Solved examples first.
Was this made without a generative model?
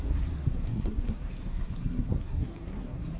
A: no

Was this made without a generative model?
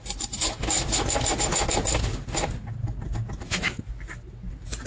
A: yes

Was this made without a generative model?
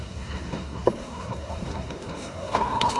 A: no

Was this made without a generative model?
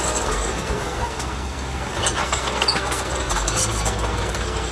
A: no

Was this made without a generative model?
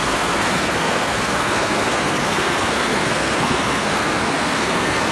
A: no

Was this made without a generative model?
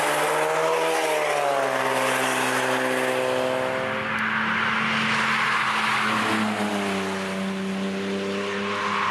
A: yes